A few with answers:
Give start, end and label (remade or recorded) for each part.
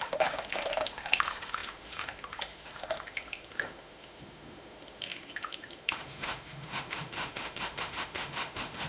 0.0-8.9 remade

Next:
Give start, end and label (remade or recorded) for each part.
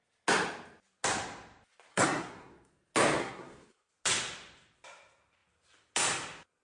0.0-1.9 recorded; 1.9-2.7 remade; 2.7-3.2 recorded; 3.2-3.9 remade; 3.9-6.6 recorded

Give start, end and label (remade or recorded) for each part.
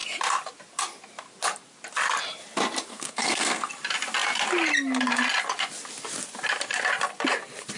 0.0-2.9 recorded; 2.9-3.7 remade; 3.7-7.8 recorded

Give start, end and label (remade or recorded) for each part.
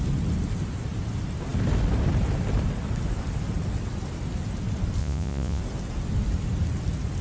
0.0-5.0 recorded; 5.0-5.6 remade; 5.6-7.2 recorded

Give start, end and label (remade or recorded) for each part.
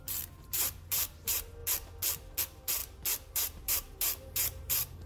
0.0-1.6 remade; 1.6-2.4 recorded; 2.4-2.8 remade; 2.8-3.3 recorded; 3.3-5.1 remade